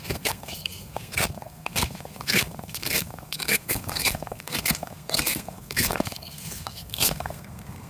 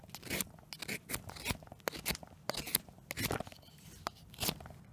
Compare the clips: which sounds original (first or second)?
second